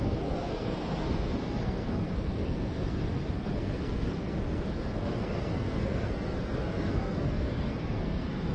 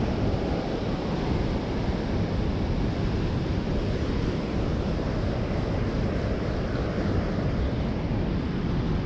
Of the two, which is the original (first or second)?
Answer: second